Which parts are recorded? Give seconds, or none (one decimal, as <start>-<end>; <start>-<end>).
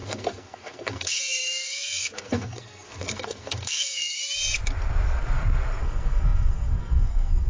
4.2-5.8